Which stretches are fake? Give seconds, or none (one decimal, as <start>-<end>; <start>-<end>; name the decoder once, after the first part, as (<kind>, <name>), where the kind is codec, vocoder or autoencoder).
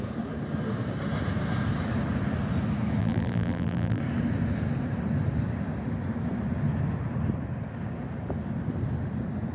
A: 3.0-4.0 (vocoder, BigVGAN v2)